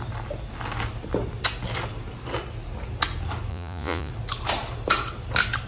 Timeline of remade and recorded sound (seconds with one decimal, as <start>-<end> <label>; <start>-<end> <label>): 0.0-3.5 recorded; 3.5-4.1 remade; 4.1-5.7 recorded